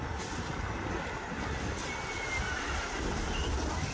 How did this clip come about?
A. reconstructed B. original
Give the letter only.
B